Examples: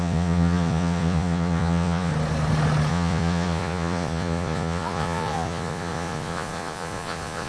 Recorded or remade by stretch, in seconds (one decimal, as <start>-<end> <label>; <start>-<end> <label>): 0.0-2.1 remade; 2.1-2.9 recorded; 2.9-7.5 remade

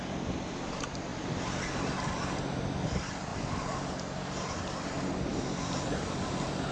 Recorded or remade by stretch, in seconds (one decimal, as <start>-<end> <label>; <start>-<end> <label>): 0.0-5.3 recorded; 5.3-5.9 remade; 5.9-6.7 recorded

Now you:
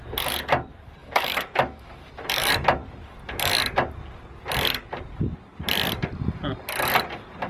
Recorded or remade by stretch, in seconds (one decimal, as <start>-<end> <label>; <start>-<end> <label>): 0.0-1.0 recorded; 1.0-2.0 remade; 2.0-7.5 recorded

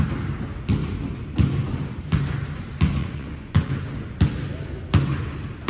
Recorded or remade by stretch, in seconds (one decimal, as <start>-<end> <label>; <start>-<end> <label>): 0.0-3.0 recorded; 3.0-3.7 remade; 3.7-5.7 recorded

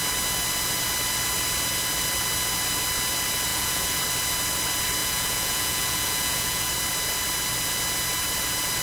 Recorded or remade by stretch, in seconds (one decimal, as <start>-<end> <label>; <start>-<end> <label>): 0.0-3.5 recorded; 3.5-4.0 remade; 4.0-5.0 recorded; 5.0-6.7 remade; 6.7-8.8 recorded

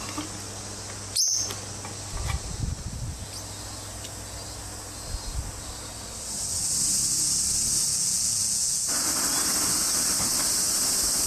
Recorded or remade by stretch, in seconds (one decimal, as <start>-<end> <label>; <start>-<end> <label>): 0.0-7.9 recorded; 7.9-8.8 remade; 8.8-11.3 recorded